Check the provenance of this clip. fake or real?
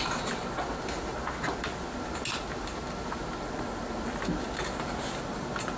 real